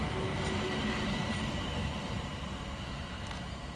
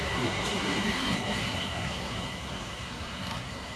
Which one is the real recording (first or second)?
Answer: first